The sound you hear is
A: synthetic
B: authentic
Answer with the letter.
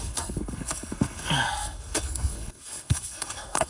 A